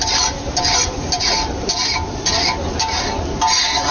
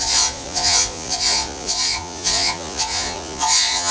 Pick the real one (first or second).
first